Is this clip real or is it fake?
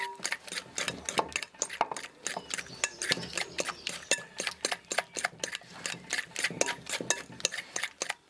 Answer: real